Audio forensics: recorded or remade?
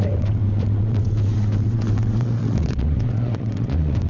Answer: remade